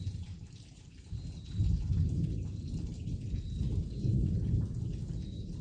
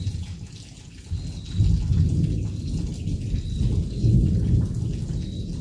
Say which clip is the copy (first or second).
first